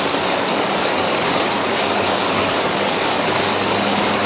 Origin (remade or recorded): remade